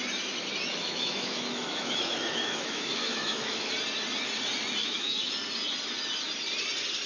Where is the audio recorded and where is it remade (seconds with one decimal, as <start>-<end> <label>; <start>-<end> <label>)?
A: 0.0-0.7 recorded; 0.7-3.7 remade; 3.7-4.8 recorded; 4.8-5.3 remade; 5.3-7.1 recorded